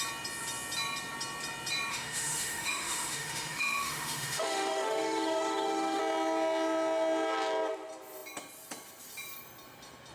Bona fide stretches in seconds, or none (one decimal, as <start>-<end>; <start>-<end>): 0.0-1.9; 6.0-10.1

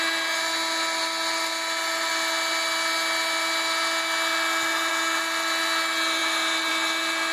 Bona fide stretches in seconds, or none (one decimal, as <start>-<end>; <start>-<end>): 0.0-7.3

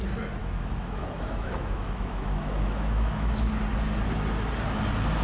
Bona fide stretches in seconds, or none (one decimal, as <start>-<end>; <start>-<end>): 0.0-0.4; 3.5-5.2

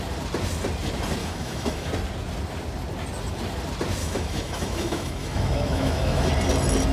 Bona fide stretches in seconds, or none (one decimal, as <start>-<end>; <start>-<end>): 0.0-1.2; 1.9-4.0; 6.3-6.9

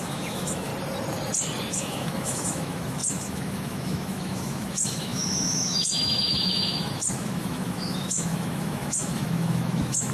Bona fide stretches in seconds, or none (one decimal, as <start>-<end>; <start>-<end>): 0.7-1.7

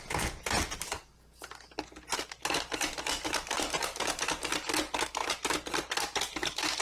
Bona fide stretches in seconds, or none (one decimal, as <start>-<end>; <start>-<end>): 0.0-6.8

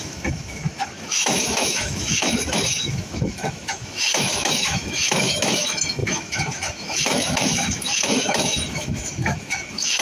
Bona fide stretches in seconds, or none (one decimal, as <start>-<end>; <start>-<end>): none

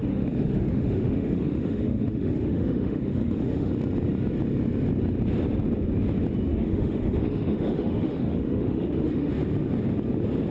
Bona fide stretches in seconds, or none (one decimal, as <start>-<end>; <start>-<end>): 3.7-6.5; 9.3-10.5